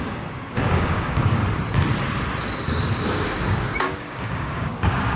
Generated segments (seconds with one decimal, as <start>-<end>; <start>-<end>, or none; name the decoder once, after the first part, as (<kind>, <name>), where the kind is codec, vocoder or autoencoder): 0.0-1.4 (codec, DAC); 3.1-5.2